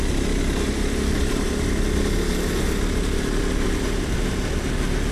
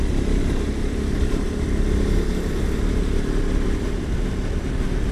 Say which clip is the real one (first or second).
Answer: first